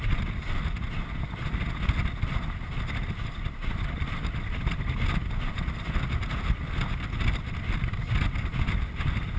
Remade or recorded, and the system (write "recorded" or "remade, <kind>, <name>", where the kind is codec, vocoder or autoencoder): recorded